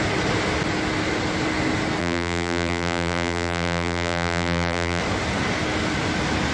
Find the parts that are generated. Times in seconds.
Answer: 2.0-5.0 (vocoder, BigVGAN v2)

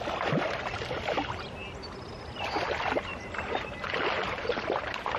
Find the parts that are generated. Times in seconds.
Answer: 3.1-4.8 (vocoder, BigVGAN v2)